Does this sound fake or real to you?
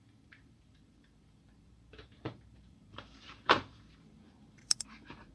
fake